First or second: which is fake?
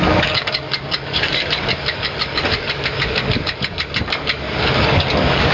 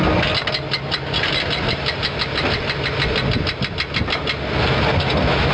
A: first